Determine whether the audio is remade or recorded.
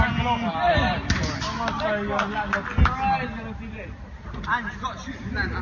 recorded